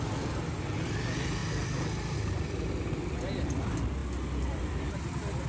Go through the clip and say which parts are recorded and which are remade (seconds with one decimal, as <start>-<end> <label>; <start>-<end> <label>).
0.0-5.5 recorded

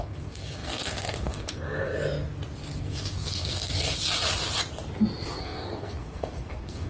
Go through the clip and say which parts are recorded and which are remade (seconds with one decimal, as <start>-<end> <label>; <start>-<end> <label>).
0.0-1.9 remade; 1.9-2.8 recorded; 2.8-3.6 remade; 3.6-5.4 recorded; 5.4-6.9 remade

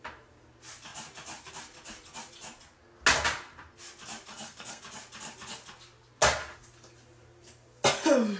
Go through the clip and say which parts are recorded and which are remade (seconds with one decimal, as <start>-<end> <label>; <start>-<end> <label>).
0.0-4.3 recorded; 4.3-4.8 remade; 4.8-8.4 recorded

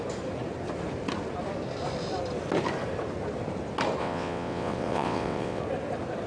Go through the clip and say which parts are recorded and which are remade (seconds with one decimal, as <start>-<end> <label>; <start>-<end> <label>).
0.0-4.0 recorded; 4.0-5.6 remade; 5.6-6.3 recorded

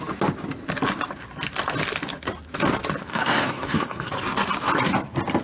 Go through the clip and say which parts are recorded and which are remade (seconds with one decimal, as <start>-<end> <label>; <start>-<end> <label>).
0.0-3.1 recorded; 3.1-4.1 remade; 4.1-5.4 recorded